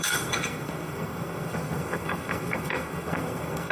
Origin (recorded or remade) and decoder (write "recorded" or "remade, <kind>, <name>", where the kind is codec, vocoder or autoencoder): remade, codec, SNAC